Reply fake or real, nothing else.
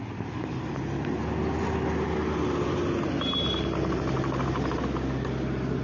real